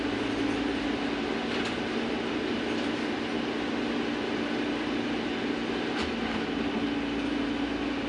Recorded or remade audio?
recorded